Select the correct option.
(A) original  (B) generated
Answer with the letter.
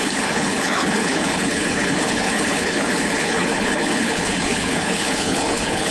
B